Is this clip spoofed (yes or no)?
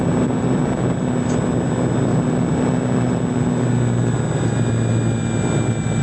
no